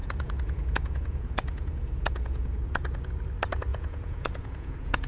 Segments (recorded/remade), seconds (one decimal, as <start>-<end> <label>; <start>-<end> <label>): 0.0-3.1 remade; 3.1-3.7 recorded; 3.7-5.1 remade